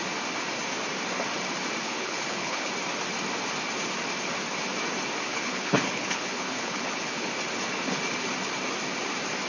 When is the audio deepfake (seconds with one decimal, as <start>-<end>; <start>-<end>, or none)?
1.8-2.7; 5.3-7.3